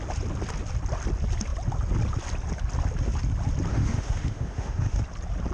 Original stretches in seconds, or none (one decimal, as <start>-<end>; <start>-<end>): 0.0-3.7; 5.0-5.5